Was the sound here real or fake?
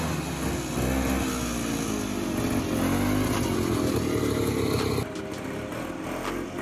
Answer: real